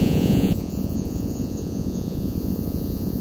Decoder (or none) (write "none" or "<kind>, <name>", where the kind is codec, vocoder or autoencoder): vocoder, Vocos